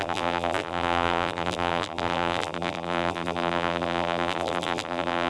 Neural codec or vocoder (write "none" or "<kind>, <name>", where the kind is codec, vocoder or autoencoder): vocoder, BigVGAN v2